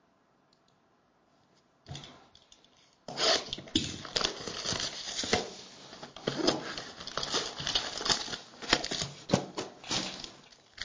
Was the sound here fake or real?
real